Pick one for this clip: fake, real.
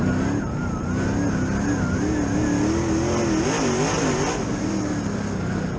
real